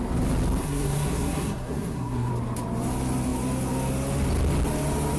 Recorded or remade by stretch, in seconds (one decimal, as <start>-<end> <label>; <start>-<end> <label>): 0.0-0.6 recorded; 0.6-2.3 remade; 2.3-5.2 recorded